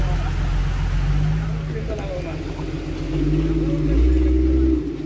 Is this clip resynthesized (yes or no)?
no